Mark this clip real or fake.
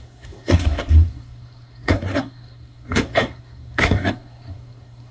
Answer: fake